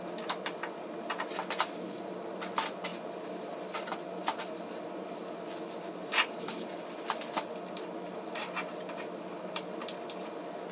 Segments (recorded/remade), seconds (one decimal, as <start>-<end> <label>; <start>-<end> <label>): 0.0-10.7 recorded